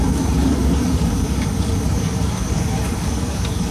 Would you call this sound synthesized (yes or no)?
yes